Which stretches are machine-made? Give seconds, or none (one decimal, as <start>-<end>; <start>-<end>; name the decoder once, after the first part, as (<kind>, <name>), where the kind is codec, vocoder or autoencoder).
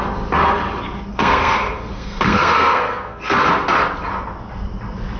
1.1-3.5 (codec, SNAC)